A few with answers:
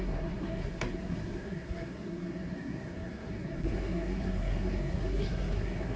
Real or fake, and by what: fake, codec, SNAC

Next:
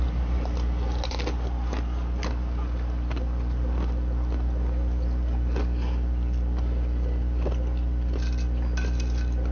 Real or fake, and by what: real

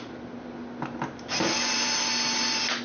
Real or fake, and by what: real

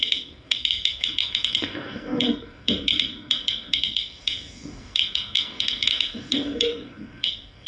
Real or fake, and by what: fake, codec, SNAC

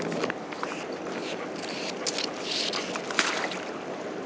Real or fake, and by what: real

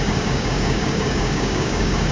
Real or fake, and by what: fake, codec, DAC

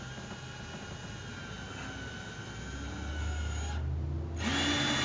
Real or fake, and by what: real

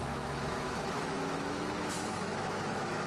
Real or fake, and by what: fake, autoencoder, DAC-VAE